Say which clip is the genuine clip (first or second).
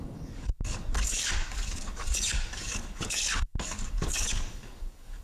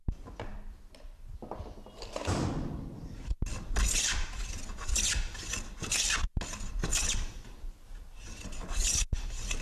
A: second